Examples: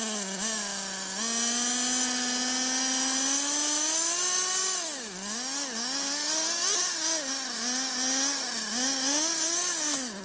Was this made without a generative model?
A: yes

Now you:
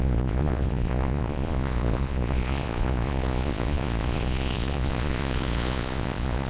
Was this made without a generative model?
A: no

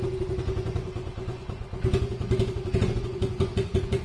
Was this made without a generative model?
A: no